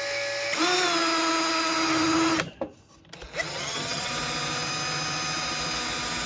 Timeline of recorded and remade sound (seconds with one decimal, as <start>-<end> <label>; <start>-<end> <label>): 0.0-3.5 recorded; 3.5-4.1 remade; 4.1-6.3 recorded